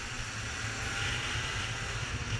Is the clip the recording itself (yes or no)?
yes